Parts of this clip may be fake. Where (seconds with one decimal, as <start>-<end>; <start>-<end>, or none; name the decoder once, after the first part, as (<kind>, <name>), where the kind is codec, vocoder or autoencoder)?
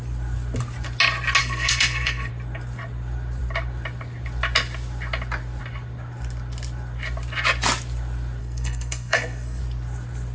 1.4-2.3 (codec, SNAC); 8.4-9.6